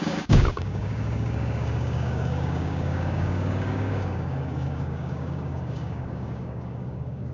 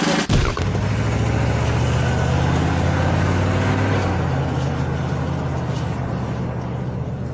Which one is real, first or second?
second